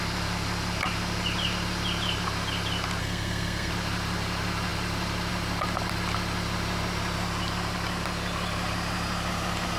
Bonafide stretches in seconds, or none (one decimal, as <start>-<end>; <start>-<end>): 0.0-3.0; 3.7-9.8